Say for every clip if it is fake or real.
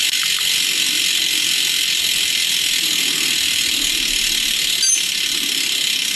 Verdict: real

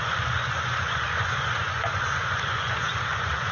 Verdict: fake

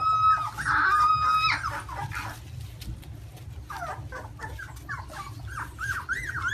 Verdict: real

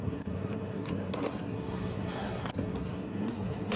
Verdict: fake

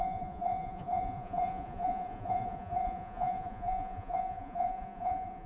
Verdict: fake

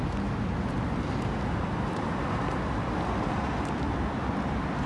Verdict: real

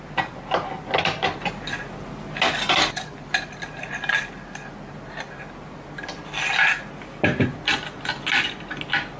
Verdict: real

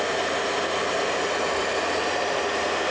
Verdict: real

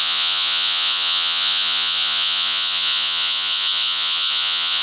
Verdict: fake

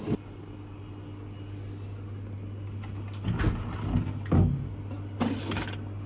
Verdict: real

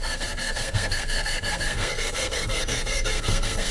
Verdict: fake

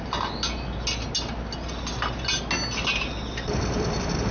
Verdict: real